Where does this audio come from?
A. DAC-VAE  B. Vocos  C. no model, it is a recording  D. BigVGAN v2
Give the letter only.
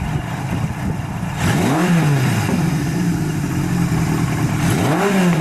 C